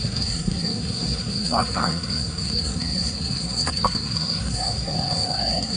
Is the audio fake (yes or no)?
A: yes